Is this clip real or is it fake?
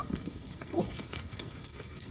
fake